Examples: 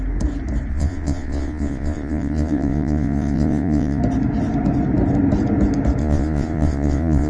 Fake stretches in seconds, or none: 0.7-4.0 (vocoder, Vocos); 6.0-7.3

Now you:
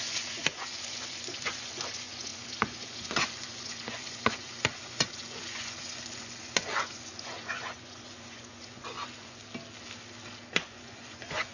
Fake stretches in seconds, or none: 0.0-9.4 (vocoder, Vocos); 10.5-11.5